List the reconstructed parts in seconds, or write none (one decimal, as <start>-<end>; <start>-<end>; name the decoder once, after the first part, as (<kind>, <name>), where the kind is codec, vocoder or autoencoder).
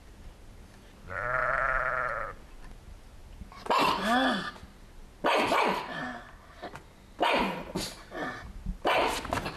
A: 1.4-2.6 (vocoder, BigVGAN v2)